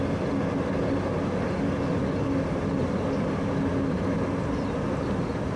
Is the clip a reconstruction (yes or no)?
no